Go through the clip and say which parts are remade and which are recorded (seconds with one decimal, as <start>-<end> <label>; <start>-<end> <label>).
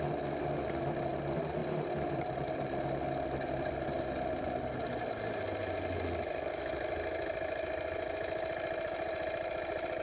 0.0-1.6 recorded; 1.6-2.7 remade; 2.7-10.0 recorded